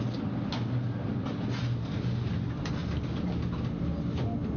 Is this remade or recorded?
recorded